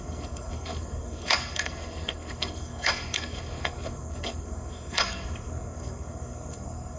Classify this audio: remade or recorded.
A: remade